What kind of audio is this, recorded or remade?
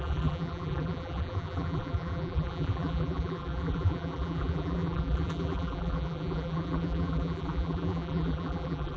remade